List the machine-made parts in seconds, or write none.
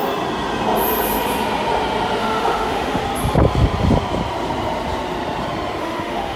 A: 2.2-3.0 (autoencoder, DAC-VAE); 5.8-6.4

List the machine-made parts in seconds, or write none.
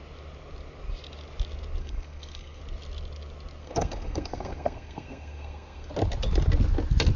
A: 1.8-2.6 (codec, SNAC); 3.6-5.9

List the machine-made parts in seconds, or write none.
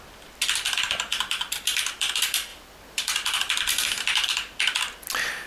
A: 1.1-1.8 (vocoder, BigVGAN v2); 2.5-3.6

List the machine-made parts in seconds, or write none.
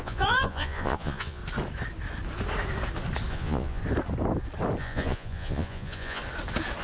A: 0.0-1.4 (vocoder, Vocos); 3.3-3.8; 4.8-6.2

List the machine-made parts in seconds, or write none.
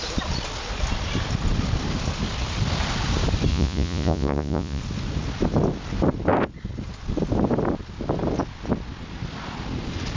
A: 3.5-4.8 (vocoder, Vocos)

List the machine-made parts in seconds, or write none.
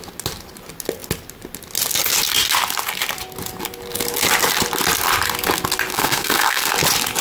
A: 5.9-6.7 (codec, SNAC)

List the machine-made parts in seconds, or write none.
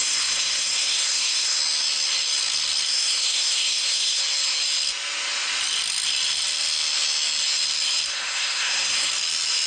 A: 0.0-1.6 (codec, SNAC); 2.9-4.2; 8.1-9.1